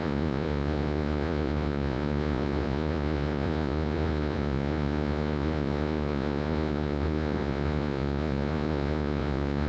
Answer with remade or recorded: remade